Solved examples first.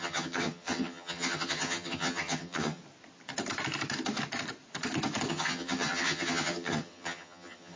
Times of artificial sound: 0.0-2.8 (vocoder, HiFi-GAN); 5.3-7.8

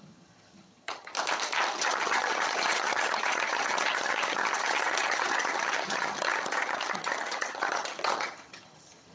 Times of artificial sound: 0.0-1.1 (vocoder, HiFi-GAN); 1.7-9.1

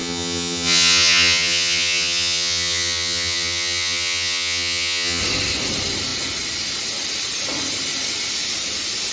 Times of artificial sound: 0.0-5.2 (vocoder, HiFi-GAN)

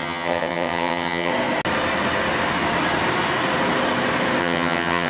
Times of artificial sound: 0.0-1.3 (vocoder, HiFi-GAN); 4.4-5.1

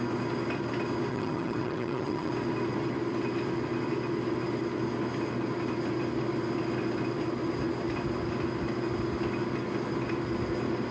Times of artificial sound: 1.1-2.3 (vocoder, HiFi-GAN)

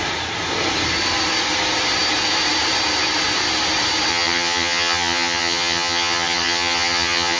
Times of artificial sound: 4.1-7.4 (vocoder, HiFi-GAN)